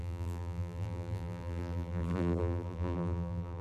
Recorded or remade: remade